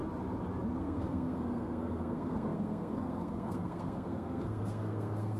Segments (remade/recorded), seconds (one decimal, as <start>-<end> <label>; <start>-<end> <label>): 0.0-0.8 recorded; 0.8-5.4 remade